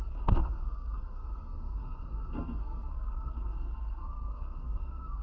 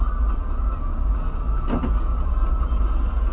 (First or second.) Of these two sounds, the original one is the second